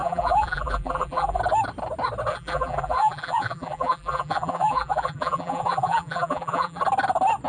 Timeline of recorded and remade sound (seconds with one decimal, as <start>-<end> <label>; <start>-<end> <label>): 0.0-1.4 remade; 1.4-2.3 recorded; 2.3-6.8 remade; 6.8-7.5 recorded